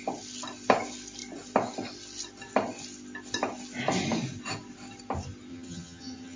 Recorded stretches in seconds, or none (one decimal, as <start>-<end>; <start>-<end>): 0.0-5.5